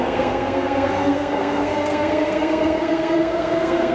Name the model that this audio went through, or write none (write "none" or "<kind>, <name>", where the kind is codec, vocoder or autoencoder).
codec, SNAC